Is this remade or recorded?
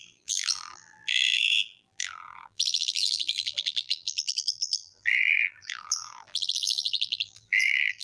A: remade